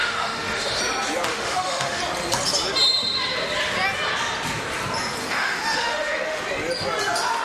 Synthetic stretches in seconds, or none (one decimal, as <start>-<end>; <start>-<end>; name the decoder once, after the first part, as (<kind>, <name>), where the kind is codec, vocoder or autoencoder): 0.0-0.8 (autoencoder, DAC-VAE); 1.3-2.0; 5.2-6.4